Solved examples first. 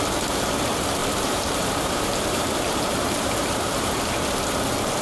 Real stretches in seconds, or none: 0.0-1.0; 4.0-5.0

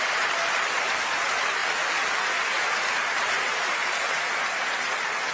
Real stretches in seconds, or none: 0.4-1.0; 1.6-2.9; 3.8-4.5